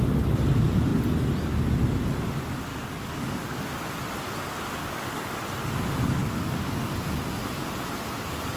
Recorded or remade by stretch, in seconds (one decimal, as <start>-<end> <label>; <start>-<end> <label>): 0.0-2.7 recorded; 2.7-3.6 remade; 3.6-4.8 recorded; 4.8-5.4 remade; 5.4-6.2 recorded; 6.2-6.9 remade; 6.9-8.6 recorded